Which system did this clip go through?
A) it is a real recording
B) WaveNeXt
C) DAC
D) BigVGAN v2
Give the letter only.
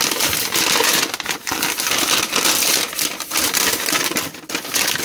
A